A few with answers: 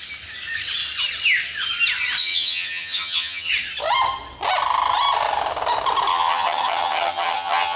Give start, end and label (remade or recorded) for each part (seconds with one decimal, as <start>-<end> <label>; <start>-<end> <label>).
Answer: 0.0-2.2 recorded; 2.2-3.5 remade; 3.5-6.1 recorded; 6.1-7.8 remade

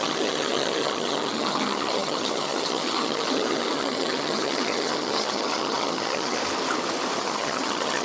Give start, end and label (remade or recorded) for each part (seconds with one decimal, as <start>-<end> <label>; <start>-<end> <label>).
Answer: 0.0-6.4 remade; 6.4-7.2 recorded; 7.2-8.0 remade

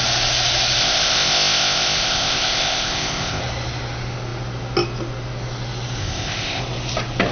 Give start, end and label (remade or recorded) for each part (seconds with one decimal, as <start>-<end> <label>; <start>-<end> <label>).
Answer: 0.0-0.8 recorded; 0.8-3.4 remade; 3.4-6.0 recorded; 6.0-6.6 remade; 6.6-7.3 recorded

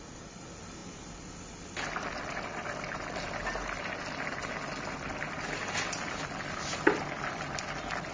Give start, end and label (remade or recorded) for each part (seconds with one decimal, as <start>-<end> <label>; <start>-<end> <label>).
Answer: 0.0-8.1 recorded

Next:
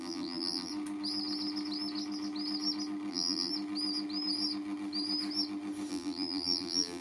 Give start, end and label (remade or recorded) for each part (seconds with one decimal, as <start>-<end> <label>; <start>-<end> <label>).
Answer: 0.0-0.7 remade; 0.7-3.1 recorded; 3.1-3.5 remade; 3.5-5.9 recorded; 5.9-7.0 remade

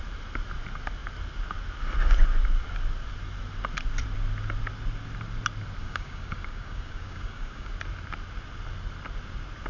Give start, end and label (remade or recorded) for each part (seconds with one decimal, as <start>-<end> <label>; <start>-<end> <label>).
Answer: 0.0-5.8 recorded; 5.8-7.7 remade; 7.7-9.7 recorded

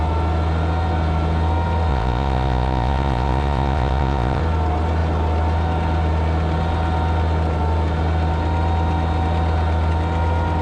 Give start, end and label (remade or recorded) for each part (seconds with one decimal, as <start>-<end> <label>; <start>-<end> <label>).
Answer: 0.0-1.9 recorded; 1.9-4.4 remade; 4.4-10.6 recorded